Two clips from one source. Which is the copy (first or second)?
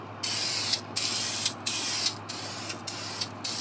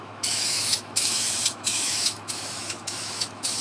second